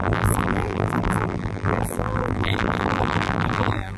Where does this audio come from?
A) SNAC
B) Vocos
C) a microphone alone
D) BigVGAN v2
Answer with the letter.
D